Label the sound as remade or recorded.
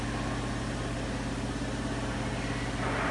recorded